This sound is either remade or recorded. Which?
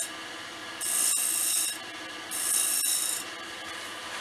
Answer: recorded